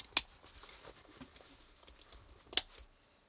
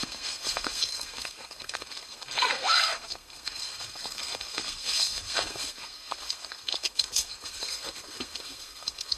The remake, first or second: second